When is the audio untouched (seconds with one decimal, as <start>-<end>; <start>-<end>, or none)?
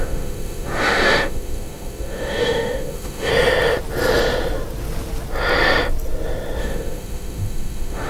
3.3-6.6